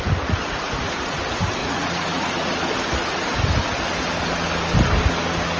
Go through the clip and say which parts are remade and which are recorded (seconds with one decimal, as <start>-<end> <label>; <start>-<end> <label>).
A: 0.0-0.4 recorded; 0.4-1.2 remade; 1.2-1.6 recorded; 1.6-2.5 remade; 2.5-5.6 recorded